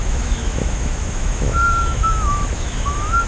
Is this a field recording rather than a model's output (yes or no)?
no